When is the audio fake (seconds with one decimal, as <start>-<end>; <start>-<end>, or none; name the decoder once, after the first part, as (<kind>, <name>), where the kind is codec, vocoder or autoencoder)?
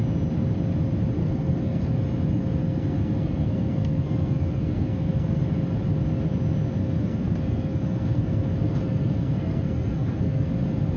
1.2-1.8 (codec, SNAC); 2.6-5.4; 6.8-10.5